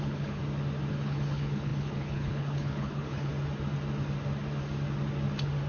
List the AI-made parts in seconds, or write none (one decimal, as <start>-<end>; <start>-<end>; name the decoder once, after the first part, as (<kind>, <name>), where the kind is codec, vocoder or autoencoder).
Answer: 0.0-0.4 (codec, HILCodec); 0.9-3.3